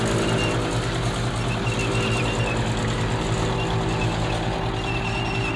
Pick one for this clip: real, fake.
real